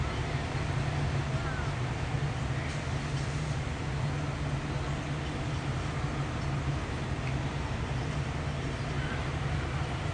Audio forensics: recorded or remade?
recorded